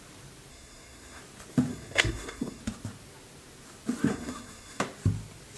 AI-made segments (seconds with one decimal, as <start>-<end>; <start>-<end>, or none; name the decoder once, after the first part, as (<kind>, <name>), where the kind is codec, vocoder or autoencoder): 0.5-1.2 (codec, SNAC); 1.7-2.6; 4.1-4.8